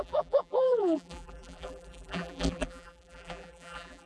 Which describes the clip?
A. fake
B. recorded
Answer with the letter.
A